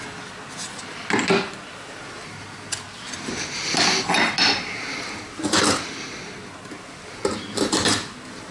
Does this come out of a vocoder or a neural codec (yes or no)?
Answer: no